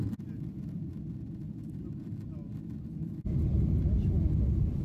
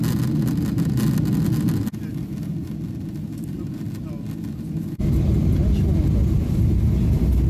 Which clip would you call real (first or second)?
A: second